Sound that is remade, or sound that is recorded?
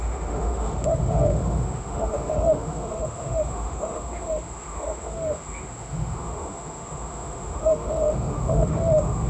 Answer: remade